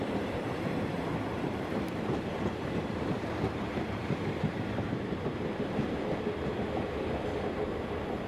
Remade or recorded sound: remade